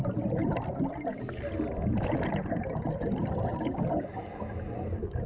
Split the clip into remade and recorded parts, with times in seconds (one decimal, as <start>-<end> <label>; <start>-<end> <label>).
0.0-5.3 recorded